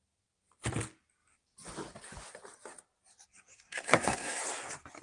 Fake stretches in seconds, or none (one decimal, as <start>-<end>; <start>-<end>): 3.5-4.4